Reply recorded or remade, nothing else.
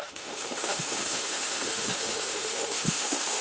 remade